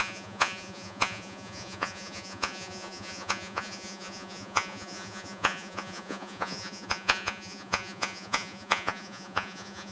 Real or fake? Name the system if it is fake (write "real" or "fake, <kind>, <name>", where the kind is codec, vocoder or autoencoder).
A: fake, vocoder, Vocos